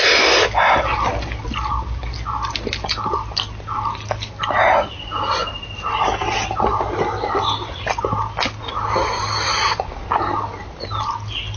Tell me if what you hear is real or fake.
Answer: real